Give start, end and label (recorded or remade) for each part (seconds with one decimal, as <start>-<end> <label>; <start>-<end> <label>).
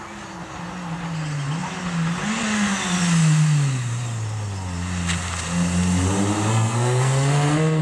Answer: 0.0-6.5 recorded; 6.5-7.8 remade